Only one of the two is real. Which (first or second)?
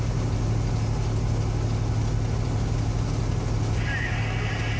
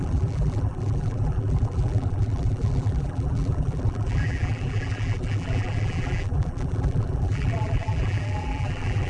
first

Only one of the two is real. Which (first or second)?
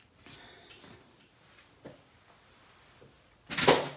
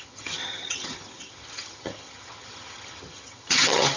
first